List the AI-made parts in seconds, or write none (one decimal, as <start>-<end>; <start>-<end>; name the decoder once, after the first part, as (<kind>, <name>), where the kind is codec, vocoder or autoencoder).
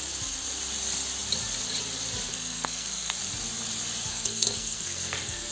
2.3-3.2 (codec, SNAC); 4.1-5.5